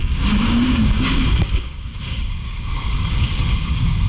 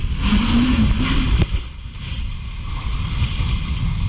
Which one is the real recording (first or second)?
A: second